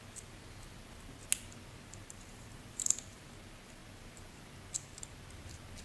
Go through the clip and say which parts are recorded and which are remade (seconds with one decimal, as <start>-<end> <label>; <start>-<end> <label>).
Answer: 0.0-2.3 recorded; 2.3-3.2 remade; 3.2-5.8 recorded